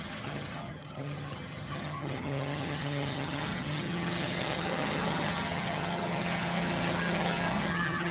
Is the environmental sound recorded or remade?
remade